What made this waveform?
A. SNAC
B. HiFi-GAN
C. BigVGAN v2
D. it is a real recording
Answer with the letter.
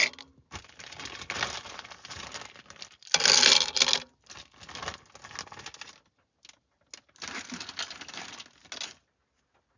D